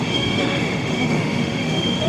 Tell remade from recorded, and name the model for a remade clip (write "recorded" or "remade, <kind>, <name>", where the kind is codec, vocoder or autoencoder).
remade, autoencoder, DAC-VAE